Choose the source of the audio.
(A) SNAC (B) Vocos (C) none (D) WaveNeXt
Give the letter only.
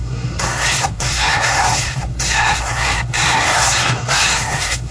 A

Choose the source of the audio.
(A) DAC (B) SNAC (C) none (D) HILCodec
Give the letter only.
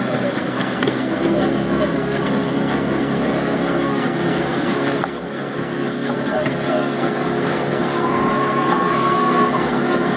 B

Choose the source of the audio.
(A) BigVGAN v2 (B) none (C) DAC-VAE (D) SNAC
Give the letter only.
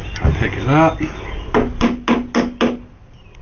B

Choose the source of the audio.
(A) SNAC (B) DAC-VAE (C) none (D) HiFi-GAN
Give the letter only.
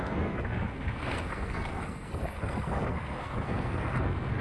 A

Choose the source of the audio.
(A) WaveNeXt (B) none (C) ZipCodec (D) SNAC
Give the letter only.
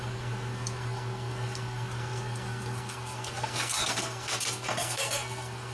D